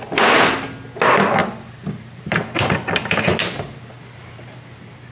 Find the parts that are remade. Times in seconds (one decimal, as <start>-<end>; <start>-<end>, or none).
1.4-3.3